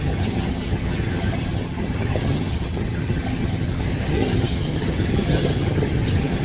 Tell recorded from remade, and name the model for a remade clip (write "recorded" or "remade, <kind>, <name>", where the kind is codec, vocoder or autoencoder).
remade, vocoder, HiFi-GAN